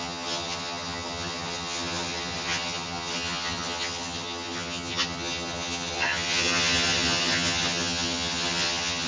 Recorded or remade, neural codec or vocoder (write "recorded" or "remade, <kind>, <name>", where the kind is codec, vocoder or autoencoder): remade, vocoder, HiFi-GAN